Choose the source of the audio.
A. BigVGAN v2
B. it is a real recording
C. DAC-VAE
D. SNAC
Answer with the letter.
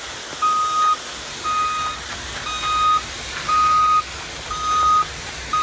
B